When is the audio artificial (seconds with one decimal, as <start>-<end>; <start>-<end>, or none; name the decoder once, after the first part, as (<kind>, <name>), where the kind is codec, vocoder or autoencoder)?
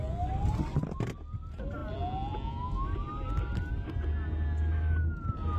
none